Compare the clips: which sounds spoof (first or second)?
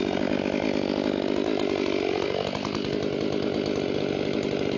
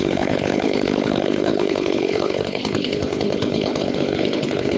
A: second